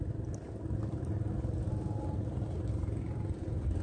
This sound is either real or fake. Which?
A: real